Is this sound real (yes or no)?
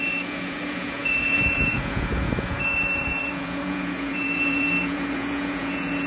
no